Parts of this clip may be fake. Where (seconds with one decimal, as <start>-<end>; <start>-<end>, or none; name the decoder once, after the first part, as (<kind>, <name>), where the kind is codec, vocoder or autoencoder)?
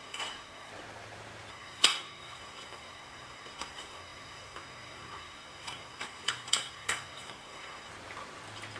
0.0-0.7 (codec, SNAC); 1.5-7.9